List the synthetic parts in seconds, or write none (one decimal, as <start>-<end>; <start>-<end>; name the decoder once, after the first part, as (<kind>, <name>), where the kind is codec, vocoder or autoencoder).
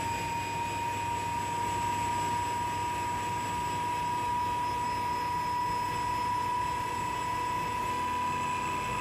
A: 7.9-9.0 (autoencoder, DAC-VAE)